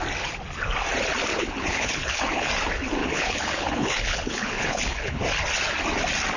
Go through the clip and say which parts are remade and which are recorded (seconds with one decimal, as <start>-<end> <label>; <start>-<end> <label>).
0.0-1.3 recorded; 1.3-2.5 remade; 2.5-3.0 recorded; 3.0-5.2 remade; 5.2-6.4 recorded